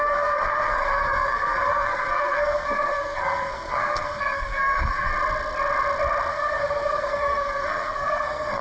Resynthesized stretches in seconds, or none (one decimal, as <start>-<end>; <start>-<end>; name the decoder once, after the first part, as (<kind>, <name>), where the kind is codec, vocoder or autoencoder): 0.0-5.1 (codec, SNAC); 6.3-8.6